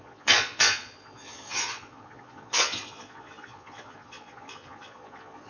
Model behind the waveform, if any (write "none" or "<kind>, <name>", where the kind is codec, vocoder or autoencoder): vocoder, Vocos